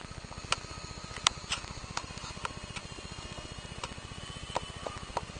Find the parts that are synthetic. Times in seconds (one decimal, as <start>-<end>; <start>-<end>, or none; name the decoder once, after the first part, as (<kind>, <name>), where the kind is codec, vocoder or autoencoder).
none